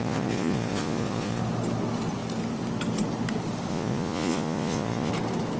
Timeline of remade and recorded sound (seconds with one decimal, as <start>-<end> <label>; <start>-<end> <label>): 0.0-1.4 remade; 1.4-3.7 recorded; 3.7-5.1 remade; 5.1-5.6 recorded